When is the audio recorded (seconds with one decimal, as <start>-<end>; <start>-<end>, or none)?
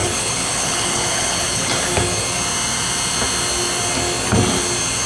1.8-5.1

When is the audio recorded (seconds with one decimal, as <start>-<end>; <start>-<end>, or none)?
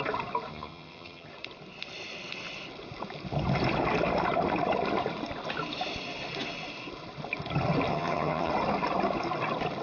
0.0-0.5; 1.3-7.9; 8.5-9.8